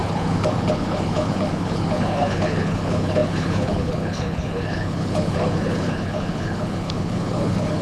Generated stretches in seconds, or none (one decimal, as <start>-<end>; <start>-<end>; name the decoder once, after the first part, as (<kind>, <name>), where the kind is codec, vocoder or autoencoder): 0.0-7.8 (codec, HILCodec)